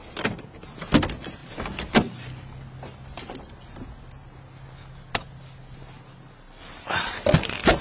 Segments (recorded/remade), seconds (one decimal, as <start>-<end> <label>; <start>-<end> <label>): 0.0-1.4 recorded; 1.4-3.2 remade; 3.2-4.2 recorded; 4.2-6.7 remade; 6.7-7.8 recorded